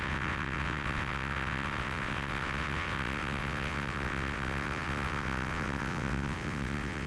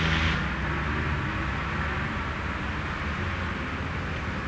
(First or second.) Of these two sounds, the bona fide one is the second